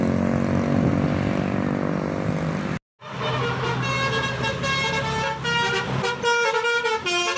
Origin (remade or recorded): recorded